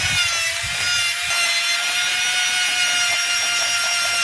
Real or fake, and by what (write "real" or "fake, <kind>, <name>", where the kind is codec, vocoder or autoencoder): real